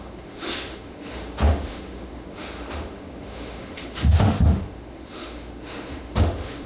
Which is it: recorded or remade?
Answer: remade